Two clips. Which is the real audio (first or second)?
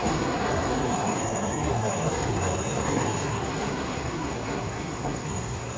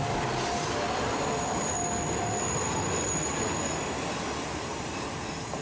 second